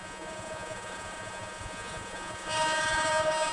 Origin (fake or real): fake